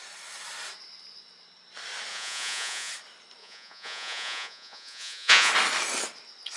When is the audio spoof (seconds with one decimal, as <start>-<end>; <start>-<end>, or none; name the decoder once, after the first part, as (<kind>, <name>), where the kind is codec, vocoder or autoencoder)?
2.1-2.9 (vocoder, Vocos); 3.4-5.5